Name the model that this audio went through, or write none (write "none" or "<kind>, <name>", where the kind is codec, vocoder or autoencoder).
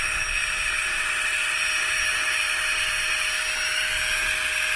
none